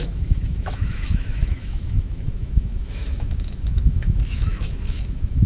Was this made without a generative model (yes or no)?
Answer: no